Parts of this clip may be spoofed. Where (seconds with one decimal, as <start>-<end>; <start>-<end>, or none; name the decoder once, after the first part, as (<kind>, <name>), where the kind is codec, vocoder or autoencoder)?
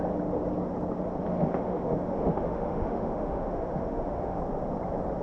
1.3-4.4 (autoencoder, DAC-VAE)